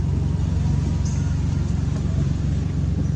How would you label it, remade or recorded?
recorded